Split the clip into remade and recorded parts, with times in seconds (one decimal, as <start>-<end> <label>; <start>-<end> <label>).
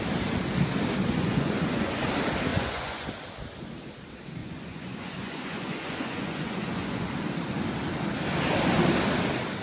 0.0-1.0 recorded; 1.0-2.0 remade; 2.0-2.5 recorded; 2.5-3.1 remade; 3.1-4.4 recorded; 4.4-7.1 remade; 7.1-9.6 recorded